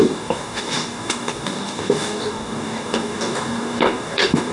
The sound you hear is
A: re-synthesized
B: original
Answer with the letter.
A